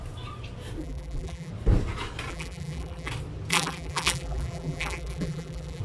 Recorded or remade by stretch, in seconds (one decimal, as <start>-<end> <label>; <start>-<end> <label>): 0.0-0.8 recorded; 0.8-1.5 remade; 1.5-2.3 recorded; 2.3-3.1 remade; 3.1-3.5 recorded; 3.5-5.8 remade